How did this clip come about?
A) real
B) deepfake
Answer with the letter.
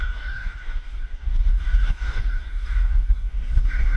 B